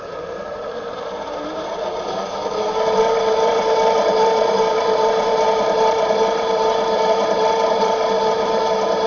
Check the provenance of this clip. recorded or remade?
remade